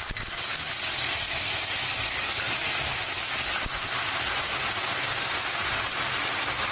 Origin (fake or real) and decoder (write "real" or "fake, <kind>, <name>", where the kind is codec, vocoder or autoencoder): real